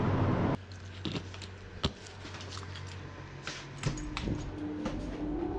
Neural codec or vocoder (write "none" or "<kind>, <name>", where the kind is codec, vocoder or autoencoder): none